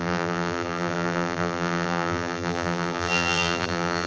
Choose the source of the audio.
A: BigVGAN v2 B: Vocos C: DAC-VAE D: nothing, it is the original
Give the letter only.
A